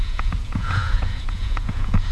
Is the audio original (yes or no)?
no